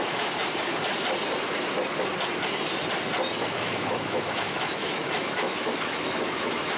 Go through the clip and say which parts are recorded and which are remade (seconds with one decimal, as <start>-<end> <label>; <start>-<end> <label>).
0.0-0.4 remade; 0.4-3.5 recorded; 3.5-6.8 remade